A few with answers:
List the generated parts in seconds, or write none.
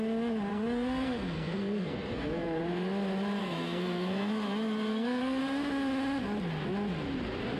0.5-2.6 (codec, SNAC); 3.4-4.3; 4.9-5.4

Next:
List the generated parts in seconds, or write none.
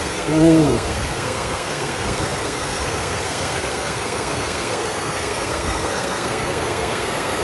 0.0-7.4 (codec, SNAC)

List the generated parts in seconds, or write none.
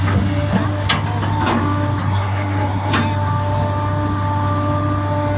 2.0-2.9 (codec, SNAC)